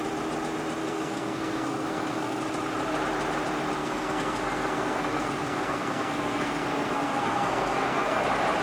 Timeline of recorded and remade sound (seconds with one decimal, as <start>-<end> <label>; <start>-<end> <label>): 0.0-0.8 recorded; 0.8-2.4 remade; 2.4-3.8 recorded; 3.8-8.2 remade; 8.2-8.6 recorded